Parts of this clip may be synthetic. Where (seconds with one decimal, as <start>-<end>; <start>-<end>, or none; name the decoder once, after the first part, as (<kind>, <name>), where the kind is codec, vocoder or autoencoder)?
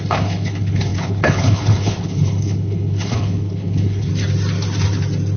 0.0-4.1 (codec, HILCodec)